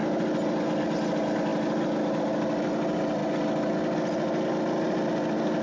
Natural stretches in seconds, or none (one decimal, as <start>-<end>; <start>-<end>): 0.0-5.6